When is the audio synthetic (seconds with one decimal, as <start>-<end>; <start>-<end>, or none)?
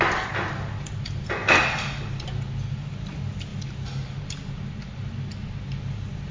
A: none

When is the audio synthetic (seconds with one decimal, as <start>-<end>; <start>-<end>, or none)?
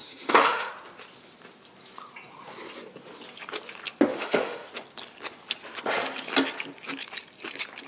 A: 0.0-0.7; 4.1-4.7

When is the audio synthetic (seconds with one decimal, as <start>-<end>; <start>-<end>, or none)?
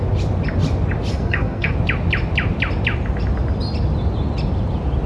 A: 1.1-1.7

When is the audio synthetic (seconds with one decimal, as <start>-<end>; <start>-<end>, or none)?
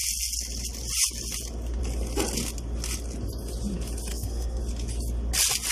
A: 4.1-4.6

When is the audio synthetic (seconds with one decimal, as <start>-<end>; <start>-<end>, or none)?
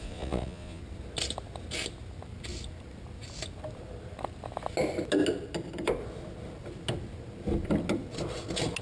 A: 0.0-0.8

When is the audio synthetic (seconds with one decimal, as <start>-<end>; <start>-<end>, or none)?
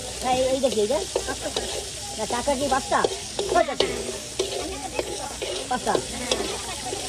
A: 3.2-4.3; 4.8-5.8